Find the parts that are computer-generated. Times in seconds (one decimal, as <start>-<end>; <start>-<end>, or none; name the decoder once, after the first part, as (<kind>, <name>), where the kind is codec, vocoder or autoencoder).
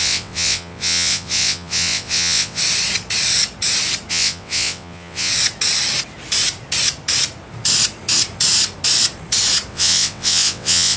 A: 0.0-2.6 (vocoder, WaveNeXt); 4.1-5.3; 9.7-11.0